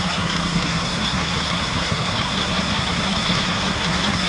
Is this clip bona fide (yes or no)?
no